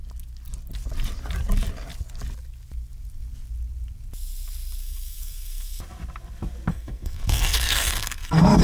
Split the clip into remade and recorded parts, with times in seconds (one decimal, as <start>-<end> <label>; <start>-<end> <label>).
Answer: 0.0-4.8 recorded; 4.8-5.8 remade; 5.8-6.7 recorded; 6.7-8.6 remade